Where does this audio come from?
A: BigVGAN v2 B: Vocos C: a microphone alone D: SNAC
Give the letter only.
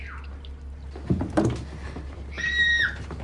C